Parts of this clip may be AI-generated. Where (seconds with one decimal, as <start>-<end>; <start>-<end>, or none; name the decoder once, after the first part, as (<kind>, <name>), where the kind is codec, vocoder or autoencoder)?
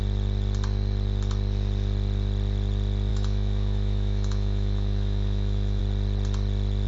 3.1-5.8 (autoencoder, DAC-VAE)